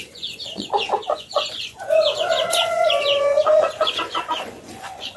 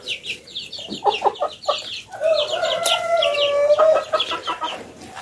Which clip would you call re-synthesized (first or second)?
first